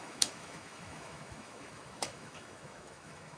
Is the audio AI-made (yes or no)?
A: yes